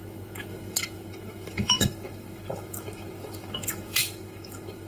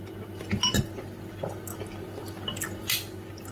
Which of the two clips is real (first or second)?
second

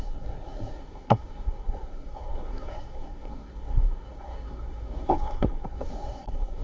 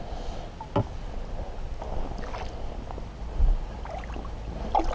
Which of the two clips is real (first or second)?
second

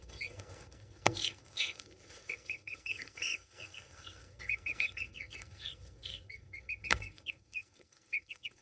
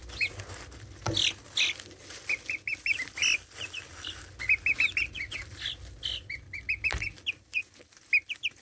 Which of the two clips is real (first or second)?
second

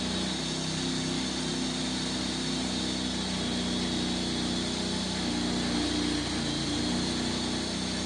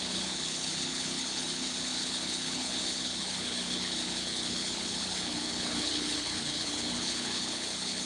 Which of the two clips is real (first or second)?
first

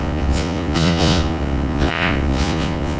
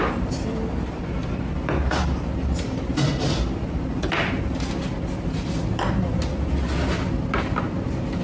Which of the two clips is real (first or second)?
second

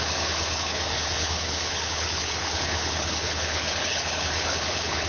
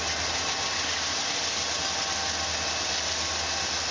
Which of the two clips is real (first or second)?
second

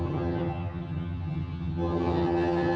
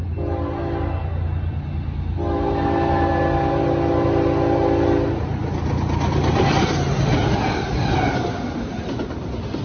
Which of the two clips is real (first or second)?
second